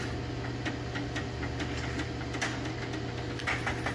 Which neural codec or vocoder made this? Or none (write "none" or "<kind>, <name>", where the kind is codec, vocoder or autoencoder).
none